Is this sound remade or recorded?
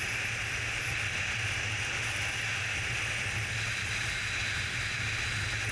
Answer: recorded